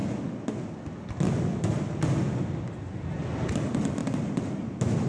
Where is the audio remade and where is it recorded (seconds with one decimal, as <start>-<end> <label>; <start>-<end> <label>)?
0.0-5.1 recorded